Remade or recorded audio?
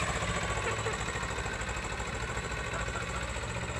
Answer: recorded